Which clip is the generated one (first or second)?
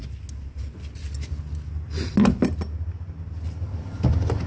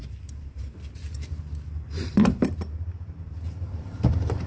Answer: second